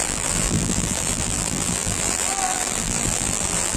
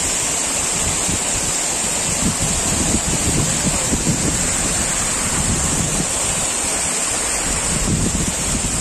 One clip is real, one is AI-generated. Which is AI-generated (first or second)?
first